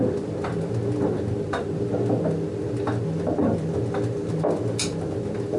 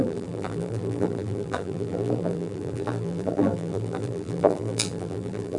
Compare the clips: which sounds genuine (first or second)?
first